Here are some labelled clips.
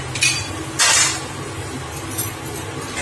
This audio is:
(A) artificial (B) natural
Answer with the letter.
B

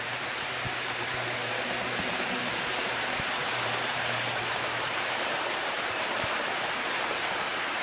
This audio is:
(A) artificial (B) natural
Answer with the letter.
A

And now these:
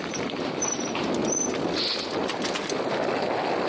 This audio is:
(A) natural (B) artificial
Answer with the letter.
A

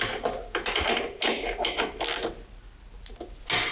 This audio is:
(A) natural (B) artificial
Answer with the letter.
A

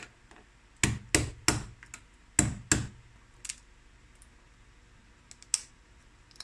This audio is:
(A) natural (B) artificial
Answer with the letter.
A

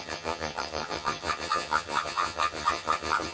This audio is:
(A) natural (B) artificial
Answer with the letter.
B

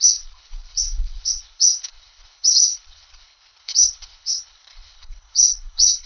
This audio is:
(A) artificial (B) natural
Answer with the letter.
A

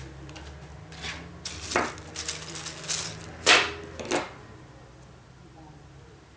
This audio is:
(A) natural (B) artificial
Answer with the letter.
A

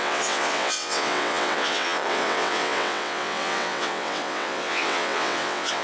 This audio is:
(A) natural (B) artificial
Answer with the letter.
B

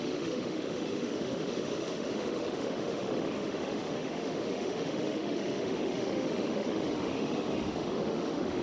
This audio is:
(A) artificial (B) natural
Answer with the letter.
A